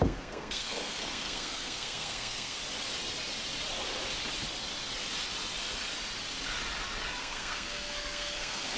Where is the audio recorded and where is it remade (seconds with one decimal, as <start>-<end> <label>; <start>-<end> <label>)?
0.0-2.6 remade; 2.6-7.2 recorded; 7.2-8.8 remade

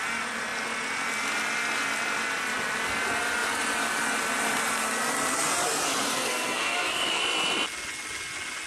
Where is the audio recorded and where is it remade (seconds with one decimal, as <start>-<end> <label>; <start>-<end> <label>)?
0.0-6.1 recorded; 6.1-7.2 remade; 7.2-8.7 recorded

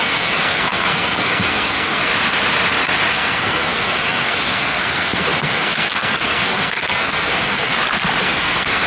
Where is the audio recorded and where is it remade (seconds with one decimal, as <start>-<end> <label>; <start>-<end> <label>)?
0.0-2.1 remade; 2.1-3.1 recorded; 3.1-7.7 remade; 7.7-8.2 recorded; 8.2-8.9 remade

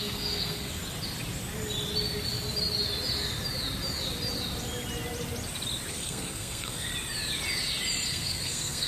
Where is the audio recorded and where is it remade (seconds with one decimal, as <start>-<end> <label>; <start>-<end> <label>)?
0.0-0.8 remade; 0.8-5.9 recorded; 5.9-6.9 remade; 6.9-8.1 recorded; 8.1-8.9 remade